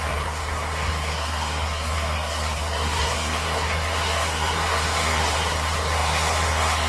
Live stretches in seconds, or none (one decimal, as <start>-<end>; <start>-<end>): none